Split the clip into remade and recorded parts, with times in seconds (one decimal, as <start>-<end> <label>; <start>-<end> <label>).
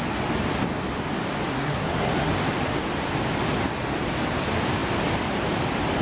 0.0-1.5 recorded; 1.5-2.3 remade; 2.3-6.0 recorded